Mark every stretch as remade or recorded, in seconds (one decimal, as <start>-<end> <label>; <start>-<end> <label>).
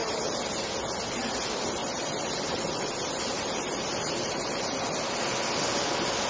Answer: 0.0-1.2 remade; 1.2-1.8 recorded; 1.8-5.2 remade; 5.2-6.3 recorded